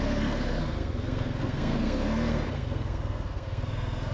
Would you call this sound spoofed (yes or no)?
yes